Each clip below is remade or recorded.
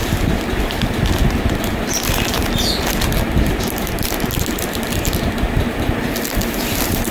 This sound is recorded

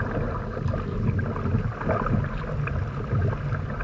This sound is recorded